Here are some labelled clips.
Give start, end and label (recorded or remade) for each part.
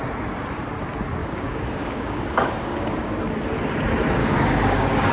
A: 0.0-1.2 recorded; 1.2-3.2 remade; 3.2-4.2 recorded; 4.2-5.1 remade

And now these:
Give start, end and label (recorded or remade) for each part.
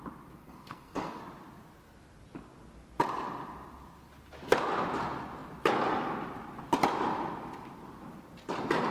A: 0.0-0.4 recorded; 0.4-1.2 remade; 1.2-8.9 recorded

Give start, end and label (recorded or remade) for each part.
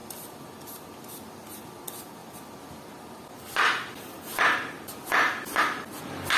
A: 0.0-6.4 recorded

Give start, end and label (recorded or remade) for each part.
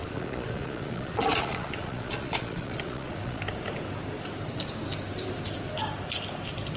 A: 0.0-3.4 remade; 3.4-6.8 recorded